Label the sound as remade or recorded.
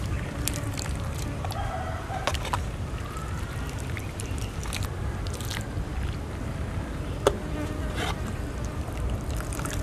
remade